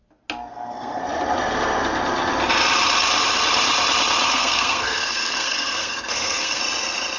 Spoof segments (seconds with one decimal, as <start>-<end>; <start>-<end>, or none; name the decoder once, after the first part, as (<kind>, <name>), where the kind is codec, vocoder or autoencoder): 0.5-1.0 (codec, SNAC); 4.3-6.6